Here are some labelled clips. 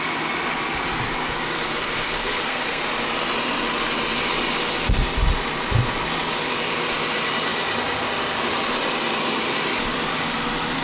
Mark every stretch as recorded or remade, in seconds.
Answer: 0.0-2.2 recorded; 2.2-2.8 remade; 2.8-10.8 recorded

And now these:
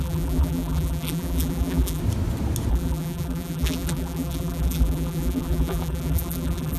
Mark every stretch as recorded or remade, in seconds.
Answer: 0.0-2.0 remade; 2.0-2.7 recorded; 2.7-6.8 remade

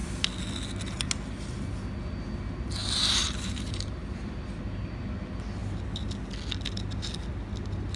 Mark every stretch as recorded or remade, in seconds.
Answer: 0.0-2.8 recorded; 2.8-4.6 remade; 4.6-8.0 recorded

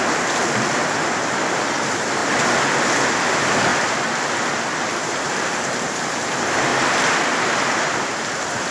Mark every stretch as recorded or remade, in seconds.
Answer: 0.0-2.2 remade; 2.2-3.2 recorded; 3.2-3.7 remade; 3.7-4.8 recorded; 4.8-6.7 remade; 6.7-7.8 recorded; 7.8-8.7 remade

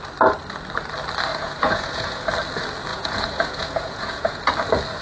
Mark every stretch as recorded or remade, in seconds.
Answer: 0.0-1.3 recorded; 1.3-2.2 remade; 2.2-2.9 recorded; 2.9-4.5 remade; 4.5-5.0 recorded

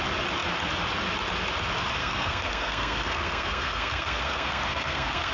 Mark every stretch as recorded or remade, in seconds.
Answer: 0.0-2.0 recorded; 2.0-5.3 remade

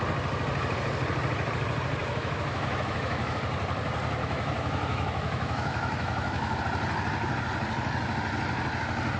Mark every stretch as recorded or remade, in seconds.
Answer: 0.0-2.0 recorded; 2.0-3.4 remade; 3.4-4.2 recorded; 4.2-6.6 remade; 6.6-9.2 recorded

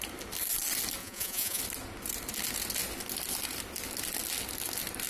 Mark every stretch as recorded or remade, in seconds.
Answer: 0.0-1.0 recorded; 1.0-1.6 remade; 1.6-5.1 recorded